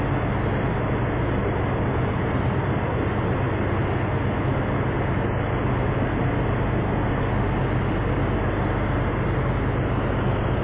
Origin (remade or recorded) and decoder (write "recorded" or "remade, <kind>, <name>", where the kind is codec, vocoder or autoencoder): recorded